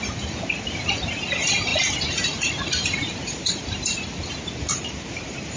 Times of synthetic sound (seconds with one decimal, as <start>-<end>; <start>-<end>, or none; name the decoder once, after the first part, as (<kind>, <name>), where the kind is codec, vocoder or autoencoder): 0.0-5.6 (vocoder, BigVGAN v2)